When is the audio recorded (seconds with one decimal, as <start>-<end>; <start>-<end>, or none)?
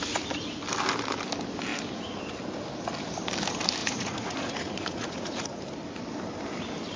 0.0-3.8; 5.6-7.0